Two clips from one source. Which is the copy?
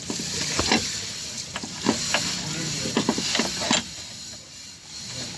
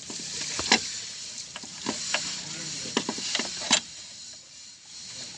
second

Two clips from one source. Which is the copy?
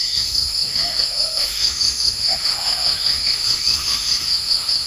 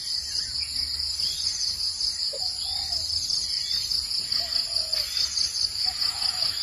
first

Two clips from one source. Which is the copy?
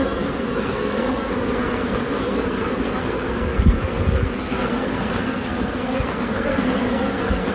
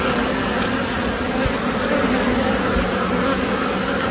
first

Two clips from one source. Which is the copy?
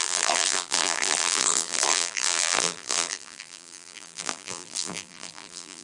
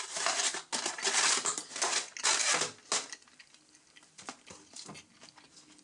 first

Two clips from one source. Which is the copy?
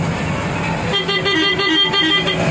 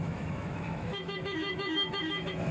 second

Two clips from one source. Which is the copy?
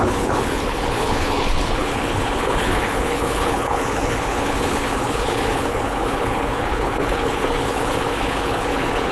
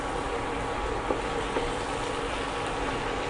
first